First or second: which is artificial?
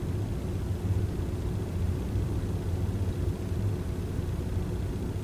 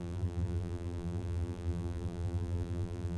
second